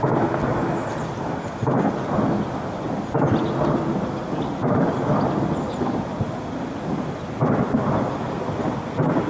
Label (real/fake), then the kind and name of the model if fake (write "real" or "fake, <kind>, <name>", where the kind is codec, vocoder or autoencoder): real